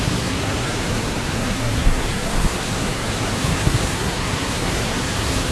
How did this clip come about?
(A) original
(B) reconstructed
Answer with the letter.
B